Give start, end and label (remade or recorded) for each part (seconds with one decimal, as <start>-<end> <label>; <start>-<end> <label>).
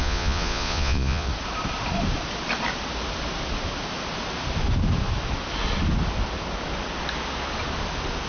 0.0-1.3 remade; 1.3-8.3 recorded